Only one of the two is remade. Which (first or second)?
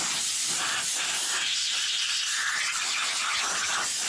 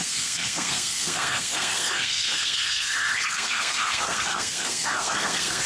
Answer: second